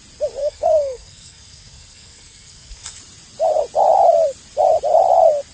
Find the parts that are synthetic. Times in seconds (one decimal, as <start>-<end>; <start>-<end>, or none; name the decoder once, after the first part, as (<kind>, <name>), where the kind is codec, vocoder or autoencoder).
0.4-3.0 (codec, SNAC)